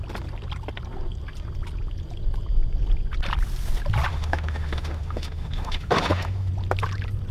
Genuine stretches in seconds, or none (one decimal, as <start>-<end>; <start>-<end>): 0.0-4.1; 6.5-7.3